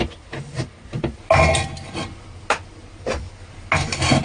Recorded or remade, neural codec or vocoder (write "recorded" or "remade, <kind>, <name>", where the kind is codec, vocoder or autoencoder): recorded